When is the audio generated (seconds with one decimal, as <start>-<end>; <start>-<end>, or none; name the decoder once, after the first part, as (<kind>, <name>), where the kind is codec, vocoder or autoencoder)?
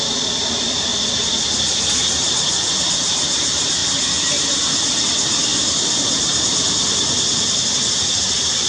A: 0.9-2.9 (vocoder, BigVGAN v2); 5.5-7.7